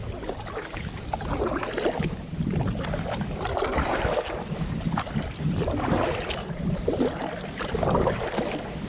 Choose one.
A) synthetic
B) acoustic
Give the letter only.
B